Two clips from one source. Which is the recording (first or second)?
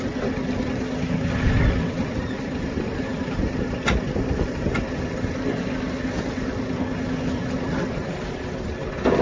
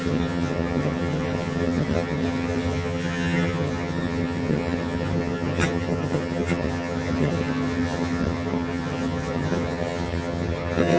first